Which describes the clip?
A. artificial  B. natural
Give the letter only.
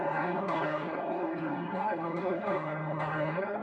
A